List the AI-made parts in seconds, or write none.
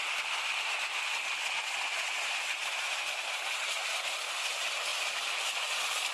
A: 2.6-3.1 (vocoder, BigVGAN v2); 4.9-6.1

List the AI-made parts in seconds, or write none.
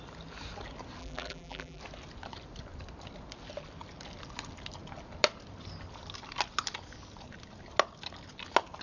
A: 1.0-1.8 (vocoder, BigVGAN v2)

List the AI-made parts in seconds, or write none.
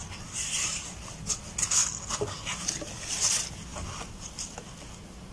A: none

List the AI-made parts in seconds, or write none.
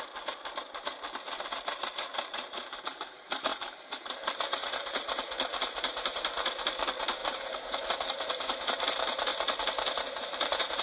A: 0.0-9.3 (vocoder, BigVGAN v2); 10.2-10.8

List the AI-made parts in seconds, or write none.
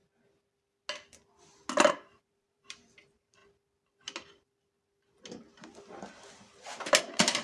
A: 1.9-3.4 (vocoder, BigVGAN v2); 7.0-7.4